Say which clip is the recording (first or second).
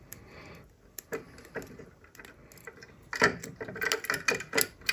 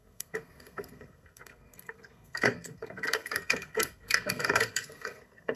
first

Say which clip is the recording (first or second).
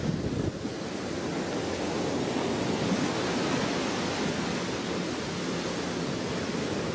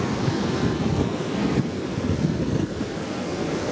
first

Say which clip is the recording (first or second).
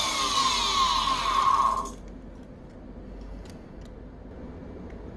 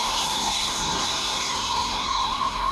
first